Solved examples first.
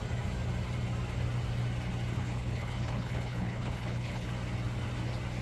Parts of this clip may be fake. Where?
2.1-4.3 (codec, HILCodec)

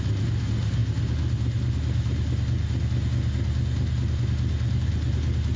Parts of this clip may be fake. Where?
none

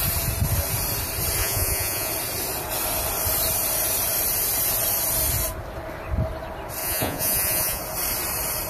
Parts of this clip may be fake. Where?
1.4-2.1 (vocoder, Vocos); 6.8-7.8